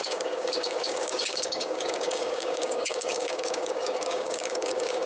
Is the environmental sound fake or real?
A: fake